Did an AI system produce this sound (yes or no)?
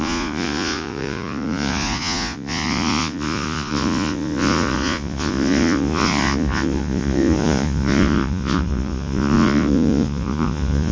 yes